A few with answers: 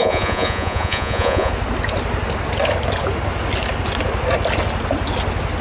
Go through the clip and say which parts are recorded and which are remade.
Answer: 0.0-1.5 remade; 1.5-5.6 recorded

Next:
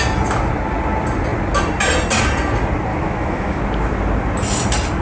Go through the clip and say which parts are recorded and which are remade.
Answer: 0.0-2.9 recorded; 2.9-3.6 remade; 3.6-5.0 recorded

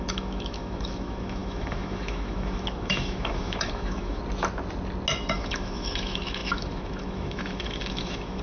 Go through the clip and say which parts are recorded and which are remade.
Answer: 0.0-4.2 remade; 4.2-5.1 recorded; 5.1-8.4 remade

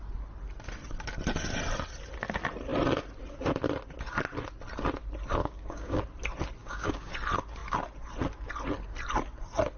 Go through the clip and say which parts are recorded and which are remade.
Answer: 0.0-5.4 recorded; 5.4-6.0 remade; 6.0-6.6 recorded; 6.6-7.1 remade; 7.1-9.8 recorded